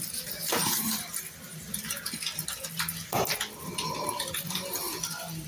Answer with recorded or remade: recorded